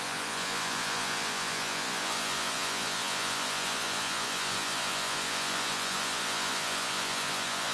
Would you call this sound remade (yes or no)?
yes